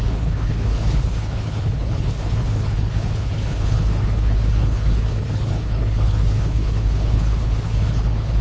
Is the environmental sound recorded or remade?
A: remade